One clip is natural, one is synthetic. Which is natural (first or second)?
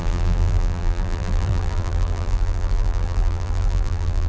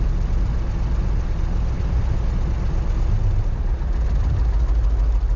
second